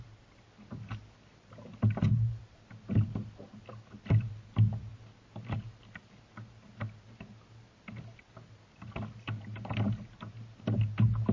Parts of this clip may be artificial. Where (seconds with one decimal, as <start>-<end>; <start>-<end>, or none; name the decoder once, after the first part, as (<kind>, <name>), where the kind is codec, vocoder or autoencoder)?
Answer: none